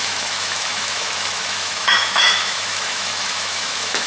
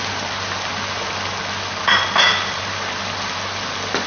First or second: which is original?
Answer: second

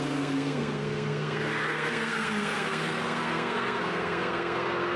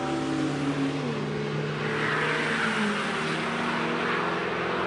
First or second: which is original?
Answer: second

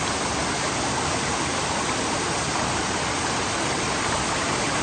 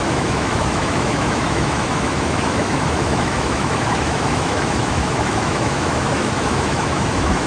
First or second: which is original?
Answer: first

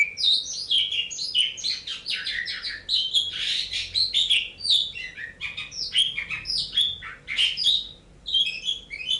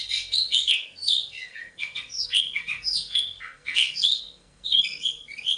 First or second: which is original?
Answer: first